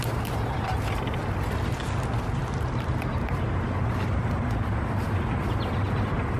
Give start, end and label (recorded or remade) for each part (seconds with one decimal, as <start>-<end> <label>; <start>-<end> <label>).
0.0-6.4 recorded